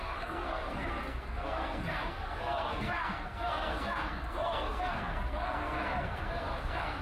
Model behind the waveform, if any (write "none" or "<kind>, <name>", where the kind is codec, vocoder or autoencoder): codec, SNAC